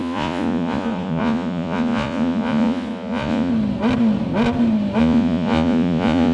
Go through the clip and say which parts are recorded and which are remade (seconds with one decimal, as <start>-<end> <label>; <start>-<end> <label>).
0.0-3.5 remade; 3.5-5.0 recorded; 5.0-6.3 remade